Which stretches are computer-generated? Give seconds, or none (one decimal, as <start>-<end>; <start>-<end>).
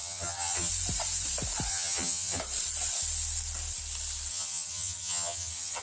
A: 0.0-0.7; 1.7-2.4; 4.3-5.8